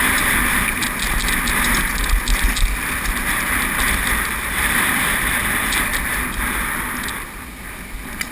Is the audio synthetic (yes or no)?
no